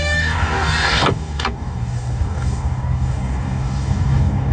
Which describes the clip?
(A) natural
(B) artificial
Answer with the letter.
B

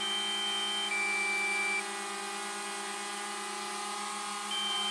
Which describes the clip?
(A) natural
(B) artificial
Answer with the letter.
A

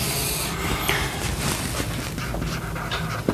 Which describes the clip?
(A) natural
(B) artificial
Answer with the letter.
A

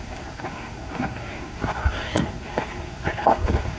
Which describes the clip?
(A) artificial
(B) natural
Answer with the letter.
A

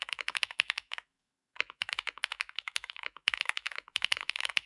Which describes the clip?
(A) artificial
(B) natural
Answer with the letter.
A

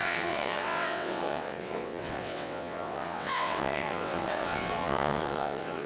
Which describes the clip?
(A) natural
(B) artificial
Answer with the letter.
B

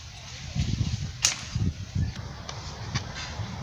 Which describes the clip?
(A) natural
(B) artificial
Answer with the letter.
A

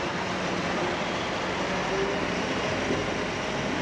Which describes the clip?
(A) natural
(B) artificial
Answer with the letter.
A